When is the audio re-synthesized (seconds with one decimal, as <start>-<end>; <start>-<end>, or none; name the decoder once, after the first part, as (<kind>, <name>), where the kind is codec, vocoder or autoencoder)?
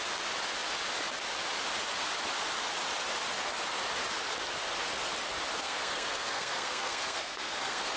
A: 5.6-8.0 (codec, SNAC)